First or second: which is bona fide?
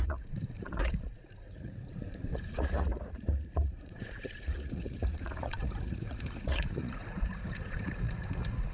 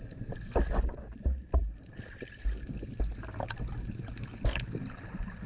second